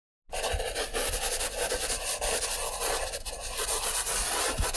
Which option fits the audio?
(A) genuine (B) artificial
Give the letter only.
A